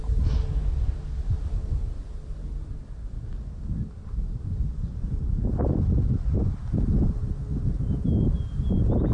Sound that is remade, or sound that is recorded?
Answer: recorded